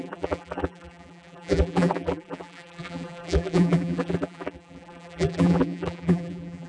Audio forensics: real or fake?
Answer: fake